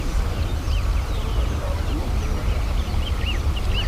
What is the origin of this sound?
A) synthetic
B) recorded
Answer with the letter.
B